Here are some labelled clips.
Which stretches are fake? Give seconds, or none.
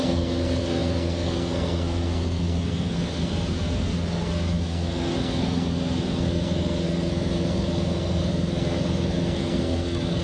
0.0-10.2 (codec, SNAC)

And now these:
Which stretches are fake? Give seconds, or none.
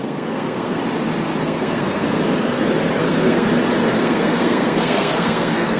0.0-0.8 (codec, SNAC); 1.4-2.2; 3.0-3.5; 4.0-5.8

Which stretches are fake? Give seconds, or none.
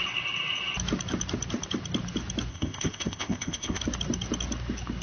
2.5-3.8 (codec, ZipCodec)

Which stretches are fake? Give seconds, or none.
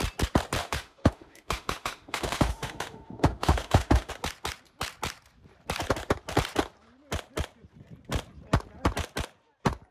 0.6-4.1 (autoencoder, DAC-VAE)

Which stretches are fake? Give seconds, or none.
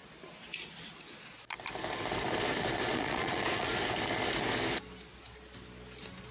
2.9-3.7 (vocoder, Vocos)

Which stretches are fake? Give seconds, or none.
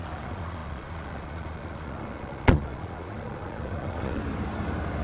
0.0-4.2 (vocoder, Vocos)